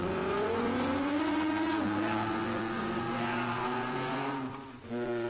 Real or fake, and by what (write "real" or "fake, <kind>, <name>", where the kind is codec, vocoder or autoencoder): fake, vocoder, Vocos